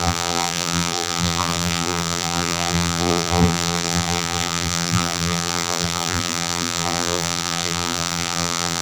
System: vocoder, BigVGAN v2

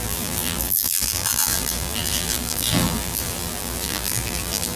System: vocoder, BigVGAN v2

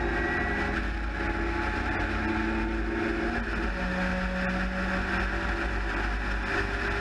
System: none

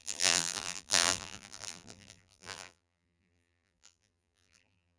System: vocoder, BigVGAN v2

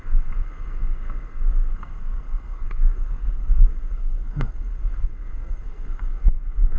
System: codec, SNAC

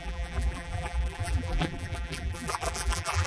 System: vocoder, BigVGAN v2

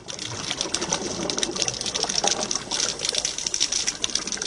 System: none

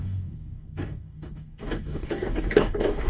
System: codec, DAC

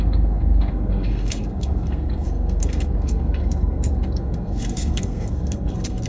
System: codec, SNAC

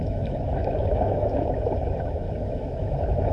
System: autoencoder, DAC-VAE